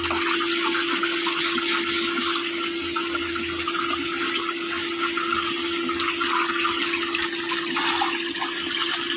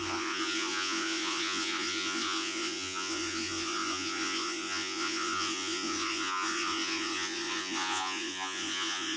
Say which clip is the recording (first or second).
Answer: first